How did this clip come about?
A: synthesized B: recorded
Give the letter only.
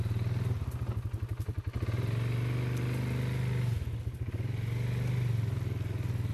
B